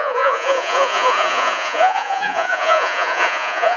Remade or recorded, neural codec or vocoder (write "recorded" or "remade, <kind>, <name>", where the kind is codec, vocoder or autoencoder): remade, vocoder, Vocos